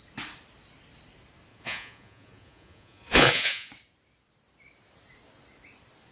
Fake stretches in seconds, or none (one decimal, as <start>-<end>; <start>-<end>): 1.5-3.7